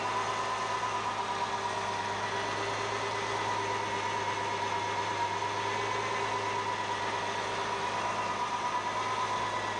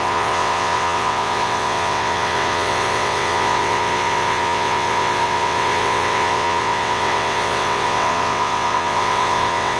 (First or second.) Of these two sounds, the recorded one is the first